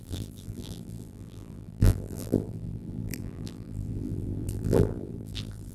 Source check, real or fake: fake